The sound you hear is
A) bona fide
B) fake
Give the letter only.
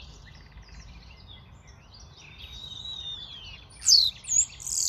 A